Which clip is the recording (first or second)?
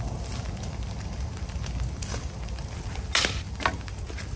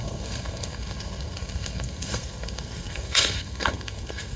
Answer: first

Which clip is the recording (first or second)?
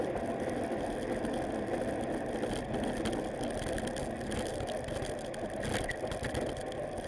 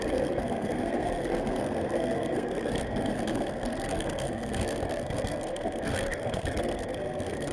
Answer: first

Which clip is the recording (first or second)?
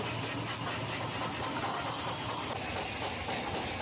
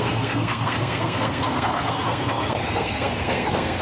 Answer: first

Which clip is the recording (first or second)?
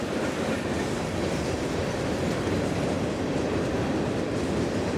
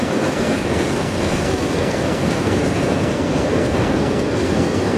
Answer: first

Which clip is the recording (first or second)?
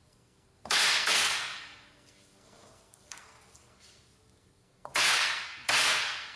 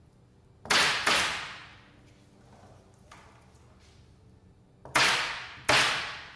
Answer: second